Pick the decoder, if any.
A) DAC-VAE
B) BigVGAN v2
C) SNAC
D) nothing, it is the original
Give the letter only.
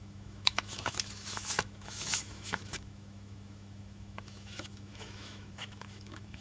A